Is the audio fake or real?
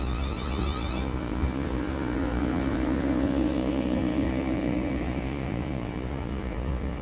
fake